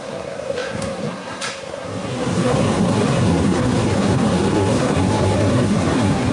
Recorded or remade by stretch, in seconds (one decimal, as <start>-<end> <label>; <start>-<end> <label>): 0.0-6.3 remade